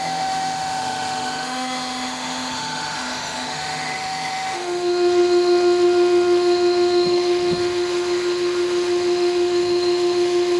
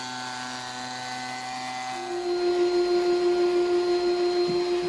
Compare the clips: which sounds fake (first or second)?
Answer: first